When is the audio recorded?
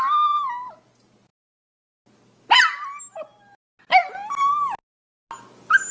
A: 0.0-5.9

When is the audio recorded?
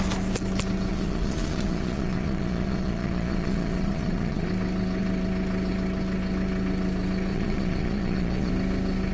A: 0.0-0.9; 4.5-7.3; 8.5-9.1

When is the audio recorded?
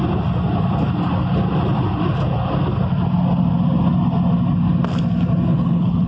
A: 0.0-5.5